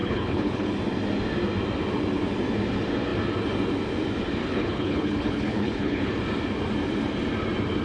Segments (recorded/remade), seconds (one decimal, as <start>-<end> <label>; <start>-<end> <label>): 0.0-0.7 remade; 0.7-4.4 recorded; 4.4-6.1 remade; 6.1-7.8 recorded